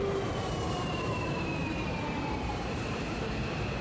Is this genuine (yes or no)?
no